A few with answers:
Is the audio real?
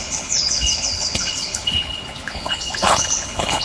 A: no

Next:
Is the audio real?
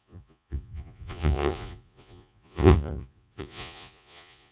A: no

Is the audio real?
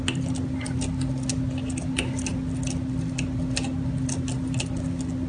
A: yes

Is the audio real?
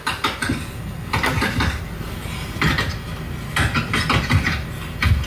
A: yes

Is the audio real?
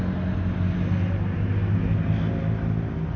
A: yes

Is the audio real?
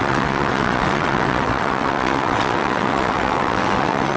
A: no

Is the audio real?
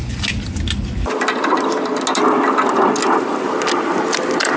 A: yes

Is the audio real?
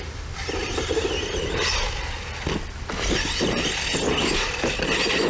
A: yes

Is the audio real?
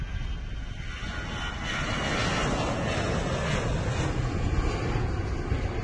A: yes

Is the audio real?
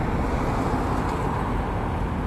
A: yes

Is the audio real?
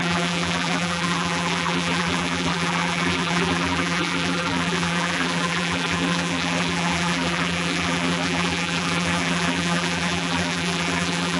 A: no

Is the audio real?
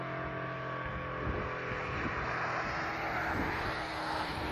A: yes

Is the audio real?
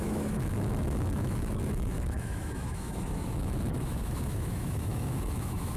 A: no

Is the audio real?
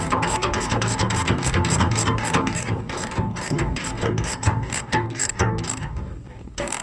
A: no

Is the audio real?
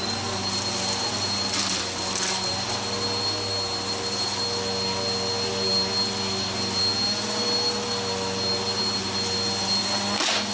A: yes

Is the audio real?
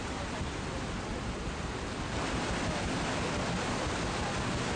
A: yes